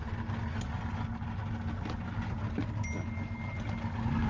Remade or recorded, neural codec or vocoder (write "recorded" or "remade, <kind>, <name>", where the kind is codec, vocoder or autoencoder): recorded